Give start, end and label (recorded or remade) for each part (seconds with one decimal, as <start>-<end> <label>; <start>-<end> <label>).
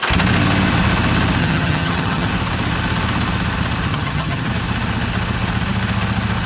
0.0-1.4 recorded; 1.4-2.3 remade; 2.3-3.9 recorded; 3.9-4.5 remade; 4.5-6.5 recorded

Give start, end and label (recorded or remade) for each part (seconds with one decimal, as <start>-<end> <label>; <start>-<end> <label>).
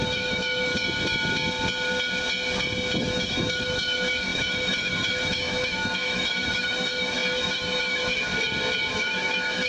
0.0-0.7 remade; 0.7-3.0 recorded; 3.0-8.3 remade; 8.3-8.9 recorded; 8.9-9.7 remade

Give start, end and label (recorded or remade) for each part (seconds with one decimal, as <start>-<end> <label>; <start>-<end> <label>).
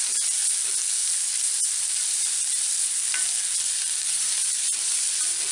0.0-4.2 recorded; 4.2-4.9 remade; 4.9-5.5 recorded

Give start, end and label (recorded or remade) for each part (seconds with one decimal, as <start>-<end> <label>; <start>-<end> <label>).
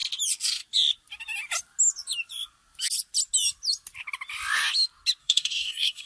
0.0-5.2 recorded; 5.2-6.1 remade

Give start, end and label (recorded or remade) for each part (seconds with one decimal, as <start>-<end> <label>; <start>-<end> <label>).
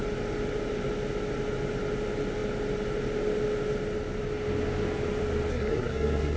0.0-5.5 recorded; 5.5-6.4 remade